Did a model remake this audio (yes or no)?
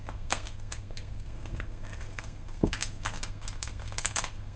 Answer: yes